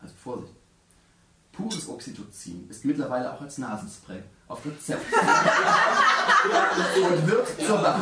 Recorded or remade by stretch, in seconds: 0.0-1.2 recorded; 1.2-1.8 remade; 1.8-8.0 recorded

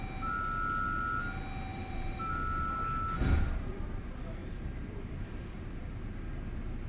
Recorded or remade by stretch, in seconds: 0.0-1.7 recorded; 1.7-2.3 remade; 2.3-3.2 recorded; 3.2-4.0 remade; 4.0-4.4 recorded; 4.4-6.0 remade; 6.0-6.9 recorded